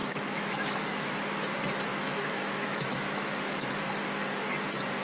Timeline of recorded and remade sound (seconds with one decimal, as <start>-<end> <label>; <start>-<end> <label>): 0.0-1.1 remade; 1.1-1.9 recorded; 1.9-3.8 remade; 3.8-5.0 recorded